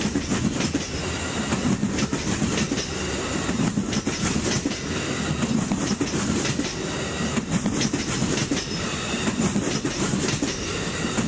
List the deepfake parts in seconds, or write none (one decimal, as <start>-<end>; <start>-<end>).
none